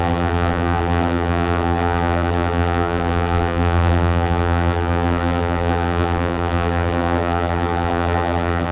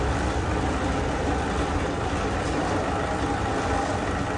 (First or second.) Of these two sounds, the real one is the second